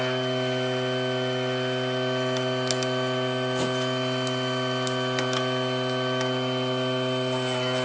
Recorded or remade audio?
recorded